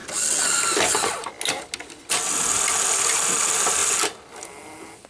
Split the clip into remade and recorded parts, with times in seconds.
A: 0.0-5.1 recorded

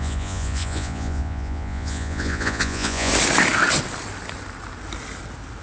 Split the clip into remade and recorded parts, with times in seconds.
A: 0.0-3.1 remade; 3.1-5.6 recorded